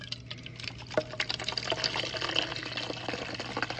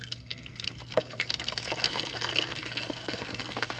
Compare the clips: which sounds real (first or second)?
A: first